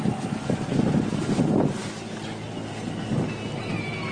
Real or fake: real